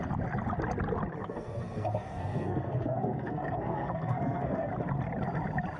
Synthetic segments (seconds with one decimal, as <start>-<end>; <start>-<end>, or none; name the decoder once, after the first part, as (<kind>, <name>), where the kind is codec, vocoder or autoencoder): 1.2-4.7 (codec, SNAC)